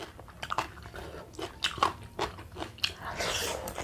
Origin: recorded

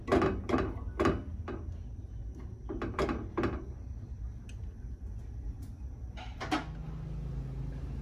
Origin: recorded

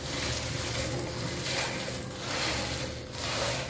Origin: recorded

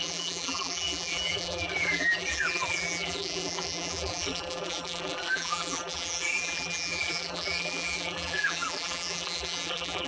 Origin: remade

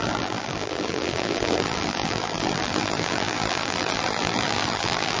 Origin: remade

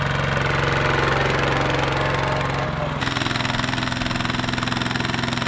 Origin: recorded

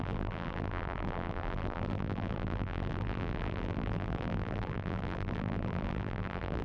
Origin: remade